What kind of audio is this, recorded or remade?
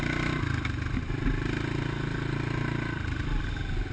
recorded